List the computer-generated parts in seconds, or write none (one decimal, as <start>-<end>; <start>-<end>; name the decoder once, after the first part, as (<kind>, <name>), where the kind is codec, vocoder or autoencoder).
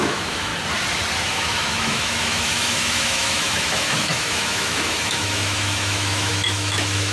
0.0-0.5 (autoencoder, DAC-VAE); 1.3-7.1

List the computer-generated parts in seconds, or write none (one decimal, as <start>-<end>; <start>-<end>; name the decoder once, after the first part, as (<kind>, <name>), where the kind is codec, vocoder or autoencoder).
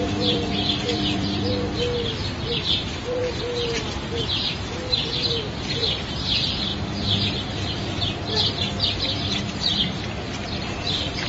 0.0-3.2 (vocoder, BigVGAN v2); 5.4-6.7; 8.8-11.3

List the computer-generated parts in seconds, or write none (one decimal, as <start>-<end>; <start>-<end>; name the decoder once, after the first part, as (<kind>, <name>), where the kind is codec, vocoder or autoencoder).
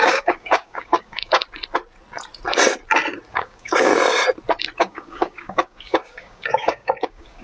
0.0-1.4 (codec, DAC); 3.3-3.9; 4.8-7.4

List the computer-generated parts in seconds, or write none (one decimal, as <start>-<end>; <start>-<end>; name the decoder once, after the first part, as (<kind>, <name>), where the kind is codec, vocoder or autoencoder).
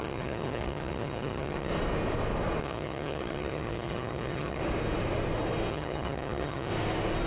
0.0-1.7 (vocoder, HiFi-GAN); 2.6-4.6; 5.7-6.7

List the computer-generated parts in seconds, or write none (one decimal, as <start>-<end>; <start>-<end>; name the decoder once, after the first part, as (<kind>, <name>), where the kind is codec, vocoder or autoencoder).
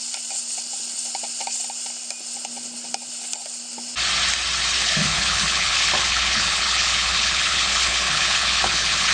4.8-9.1 (codec, HILCodec)